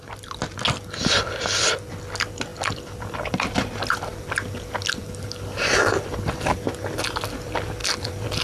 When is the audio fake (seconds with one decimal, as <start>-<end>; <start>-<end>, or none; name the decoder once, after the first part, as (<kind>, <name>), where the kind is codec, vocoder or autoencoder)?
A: none